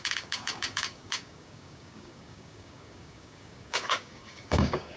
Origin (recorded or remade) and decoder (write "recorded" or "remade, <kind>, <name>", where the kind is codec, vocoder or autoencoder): remade, codec, DAC